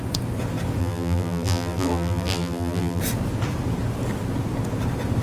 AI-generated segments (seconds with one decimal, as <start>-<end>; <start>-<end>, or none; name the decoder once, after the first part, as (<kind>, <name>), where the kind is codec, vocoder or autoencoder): 0.8-3.0 (vocoder, BigVGAN v2)